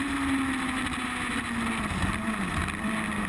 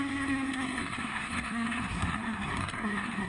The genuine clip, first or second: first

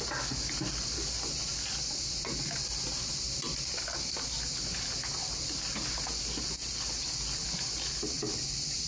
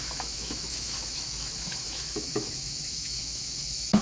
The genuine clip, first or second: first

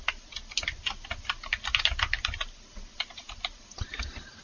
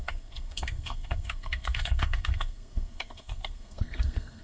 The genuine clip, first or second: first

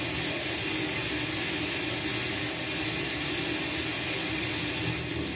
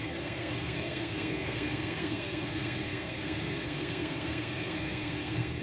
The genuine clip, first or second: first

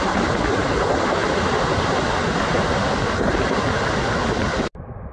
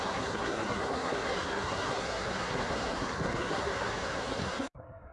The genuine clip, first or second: first